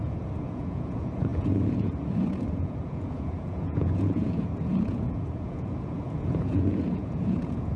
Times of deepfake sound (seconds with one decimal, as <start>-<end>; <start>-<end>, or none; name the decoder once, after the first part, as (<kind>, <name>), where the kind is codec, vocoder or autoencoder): 0.0-7.8 (vocoder, Vocos)